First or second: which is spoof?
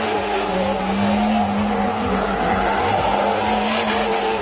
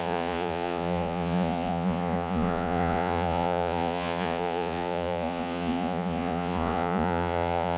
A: second